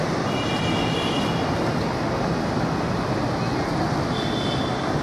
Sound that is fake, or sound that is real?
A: real